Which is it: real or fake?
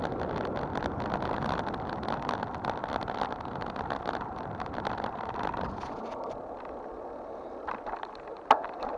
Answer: real